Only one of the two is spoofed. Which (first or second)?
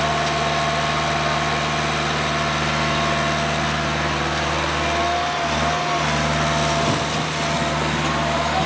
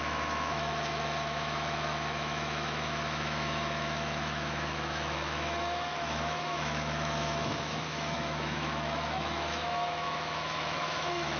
second